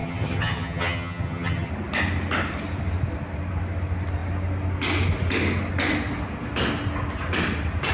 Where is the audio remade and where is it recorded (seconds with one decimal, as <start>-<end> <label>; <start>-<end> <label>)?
0.0-1.7 remade; 1.7-7.9 recorded